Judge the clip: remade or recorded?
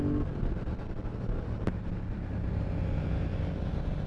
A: recorded